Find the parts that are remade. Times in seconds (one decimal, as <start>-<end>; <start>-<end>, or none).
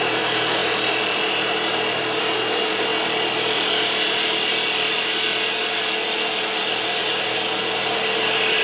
2.9-4.9